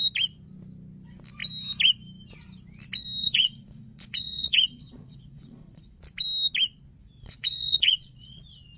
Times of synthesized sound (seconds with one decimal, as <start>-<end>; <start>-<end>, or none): 3.2-6.0; 7.0-8.4

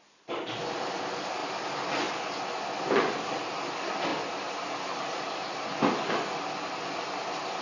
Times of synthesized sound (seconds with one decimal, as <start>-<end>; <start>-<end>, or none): none

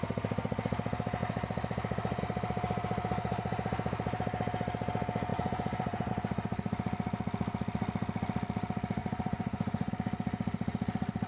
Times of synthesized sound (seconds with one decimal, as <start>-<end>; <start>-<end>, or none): 5.3-6.1; 9.0-9.9

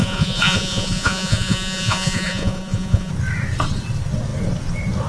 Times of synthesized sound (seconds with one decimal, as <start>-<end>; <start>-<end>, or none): 0.0-3.1